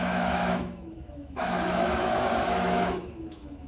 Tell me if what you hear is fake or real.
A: fake